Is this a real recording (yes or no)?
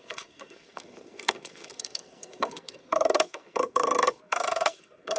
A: no